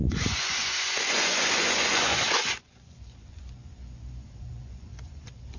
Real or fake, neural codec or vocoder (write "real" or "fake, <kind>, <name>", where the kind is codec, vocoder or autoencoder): fake, vocoder, Vocos